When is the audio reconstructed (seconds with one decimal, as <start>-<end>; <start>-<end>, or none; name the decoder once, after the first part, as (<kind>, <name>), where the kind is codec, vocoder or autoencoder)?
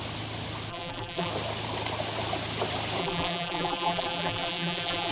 0.7-1.3 (vocoder, BigVGAN v2); 3.0-5.1